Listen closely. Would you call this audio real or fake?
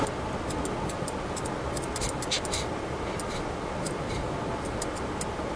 real